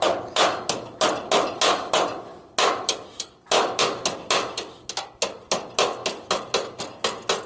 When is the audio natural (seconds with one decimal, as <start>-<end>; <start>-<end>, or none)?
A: 0.0-7.5